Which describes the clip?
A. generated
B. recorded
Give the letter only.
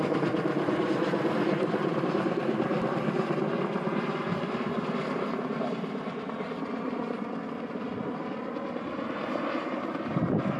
B